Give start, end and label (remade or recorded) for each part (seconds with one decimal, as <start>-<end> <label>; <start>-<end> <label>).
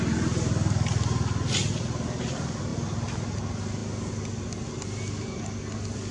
0.0-2.7 recorded; 2.7-3.4 remade; 3.4-6.1 recorded